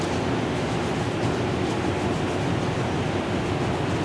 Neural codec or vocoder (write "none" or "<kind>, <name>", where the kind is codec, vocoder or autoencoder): none